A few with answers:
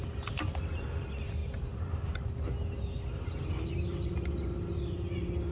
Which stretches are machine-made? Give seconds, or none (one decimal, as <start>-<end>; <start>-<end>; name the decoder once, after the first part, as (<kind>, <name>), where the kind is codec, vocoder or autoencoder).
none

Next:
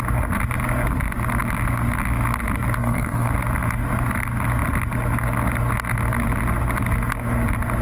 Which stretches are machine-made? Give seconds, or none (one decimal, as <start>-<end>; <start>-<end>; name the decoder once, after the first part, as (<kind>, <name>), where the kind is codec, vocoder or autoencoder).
2.8-3.3 (codec, SNAC)

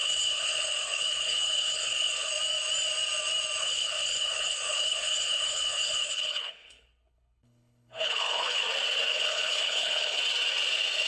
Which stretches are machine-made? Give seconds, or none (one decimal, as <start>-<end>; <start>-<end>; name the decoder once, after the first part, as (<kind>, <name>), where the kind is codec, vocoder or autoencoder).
0.0-2.3 (codec, HILCodec); 3.6-8.6; 9.1-10.2

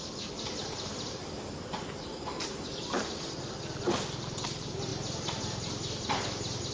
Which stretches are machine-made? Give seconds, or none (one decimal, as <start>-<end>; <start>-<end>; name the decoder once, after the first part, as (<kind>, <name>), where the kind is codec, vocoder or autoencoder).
none

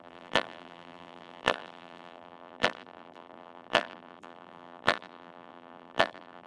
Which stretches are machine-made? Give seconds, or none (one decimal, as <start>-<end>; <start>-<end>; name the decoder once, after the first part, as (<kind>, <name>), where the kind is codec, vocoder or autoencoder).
0.0-6.5 (vocoder, BigVGAN v2)